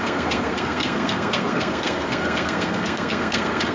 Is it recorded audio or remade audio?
remade